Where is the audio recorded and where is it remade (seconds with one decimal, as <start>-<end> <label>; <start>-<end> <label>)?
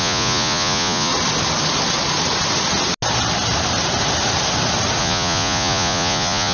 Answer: 0.0-1.1 remade; 1.1-5.0 recorded; 5.0-6.5 remade